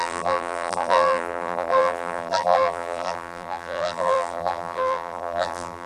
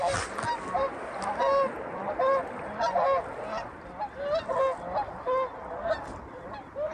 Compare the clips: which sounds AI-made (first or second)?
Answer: first